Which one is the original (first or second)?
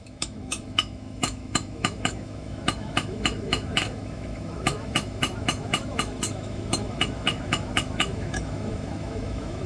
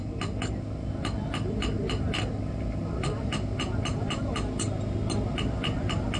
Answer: second